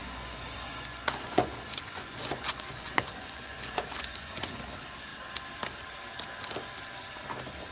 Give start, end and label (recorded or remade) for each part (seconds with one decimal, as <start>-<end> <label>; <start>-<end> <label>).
0.0-4.6 remade; 4.6-7.7 recorded